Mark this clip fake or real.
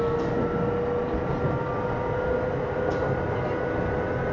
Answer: real